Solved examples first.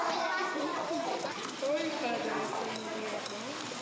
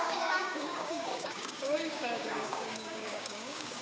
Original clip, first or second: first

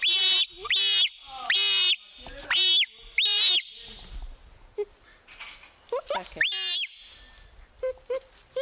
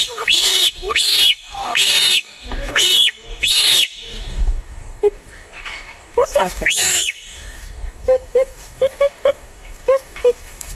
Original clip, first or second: first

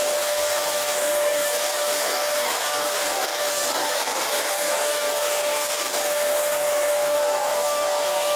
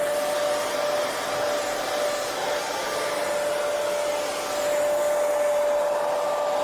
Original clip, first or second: second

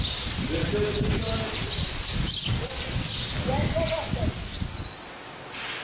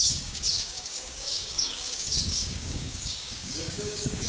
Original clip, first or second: first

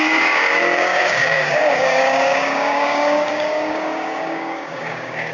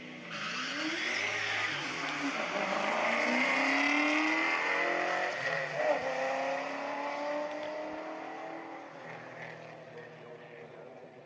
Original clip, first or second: second